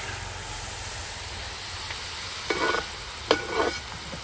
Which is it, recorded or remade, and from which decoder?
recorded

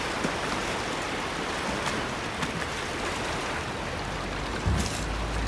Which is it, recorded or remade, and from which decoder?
recorded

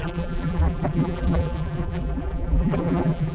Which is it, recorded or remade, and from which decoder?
remade, vocoder, BigVGAN v2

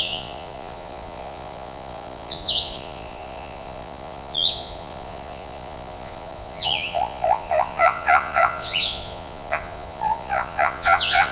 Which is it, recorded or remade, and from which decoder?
remade, vocoder, Vocos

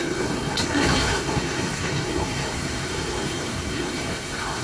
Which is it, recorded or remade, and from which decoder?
remade, codec, SNAC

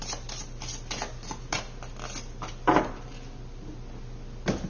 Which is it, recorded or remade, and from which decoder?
recorded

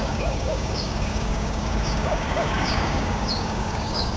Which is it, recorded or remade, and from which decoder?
remade, codec, DAC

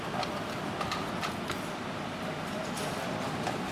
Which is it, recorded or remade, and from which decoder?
recorded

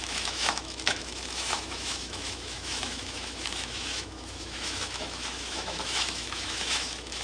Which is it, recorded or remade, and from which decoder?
remade, autoencoder, DAC-VAE